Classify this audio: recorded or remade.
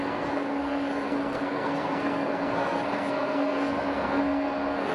remade